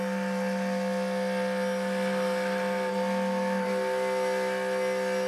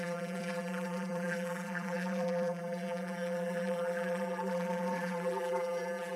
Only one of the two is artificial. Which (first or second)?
second